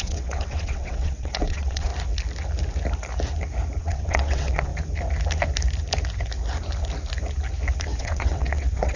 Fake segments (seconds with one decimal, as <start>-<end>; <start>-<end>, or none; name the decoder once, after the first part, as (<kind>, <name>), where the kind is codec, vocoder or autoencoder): 0.0-1.9 (vocoder, WaveNeXt); 3.8-4.7; 8.0-9.0